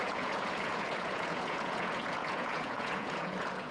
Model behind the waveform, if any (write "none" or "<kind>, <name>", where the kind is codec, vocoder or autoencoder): vocoder, Vocos